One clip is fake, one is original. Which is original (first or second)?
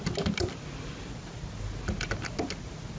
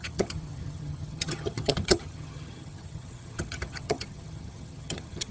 first